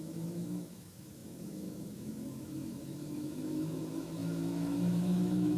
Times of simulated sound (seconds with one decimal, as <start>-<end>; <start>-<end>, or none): 0.0-5.6